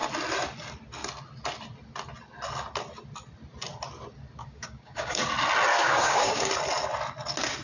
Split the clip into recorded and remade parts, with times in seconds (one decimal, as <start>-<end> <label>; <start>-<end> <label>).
0.0-4.4 recorded; 4.4-5.2 remade; 5.2-5.7 recorded; 5.7-6.5 remade; 6.5-7.6 recorded